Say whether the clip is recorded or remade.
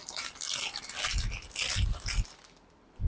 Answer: recorded